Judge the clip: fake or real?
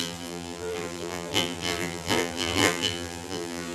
fake